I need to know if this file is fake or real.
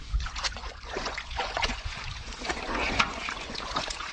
fake